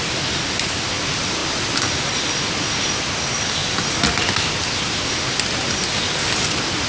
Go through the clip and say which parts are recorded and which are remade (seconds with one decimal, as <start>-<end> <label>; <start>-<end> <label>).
0.0-3.6 recorded; 3.6-4.8 remade; 4.8-6.9 recorded